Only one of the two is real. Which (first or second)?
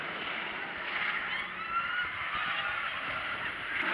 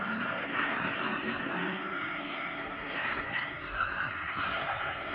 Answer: first